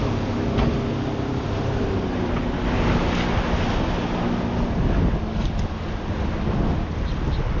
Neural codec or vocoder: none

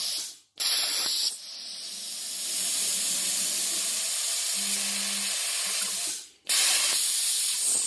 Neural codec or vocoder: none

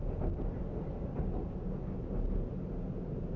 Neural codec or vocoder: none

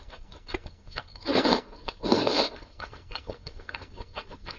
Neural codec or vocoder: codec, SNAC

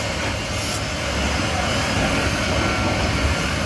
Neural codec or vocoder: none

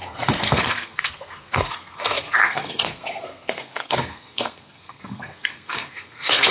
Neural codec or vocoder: codec, SNAC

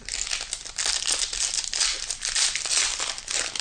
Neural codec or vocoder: none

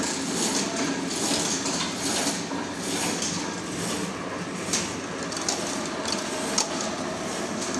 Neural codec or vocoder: none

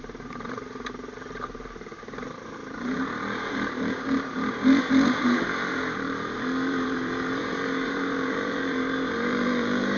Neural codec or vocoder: vocoder, BigVGAN v2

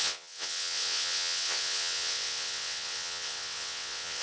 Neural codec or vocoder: vocoder, WaveNeXt